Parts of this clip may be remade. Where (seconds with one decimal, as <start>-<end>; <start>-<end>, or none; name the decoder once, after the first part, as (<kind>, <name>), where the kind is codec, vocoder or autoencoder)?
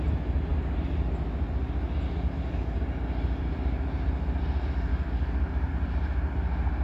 4.9-5.7 (codec, DAC)